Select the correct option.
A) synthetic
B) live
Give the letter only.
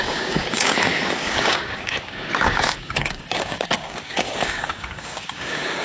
A